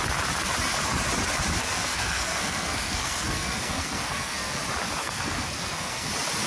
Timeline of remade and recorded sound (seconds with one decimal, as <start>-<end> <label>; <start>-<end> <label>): 0.0-1.6 recorded; 1.6-4.6 remade; 4.6-5.0 recorded; 5.0-6.1 remade; 6.1-6.5 recorded